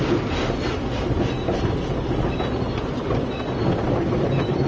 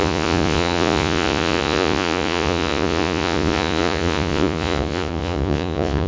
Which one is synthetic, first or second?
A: second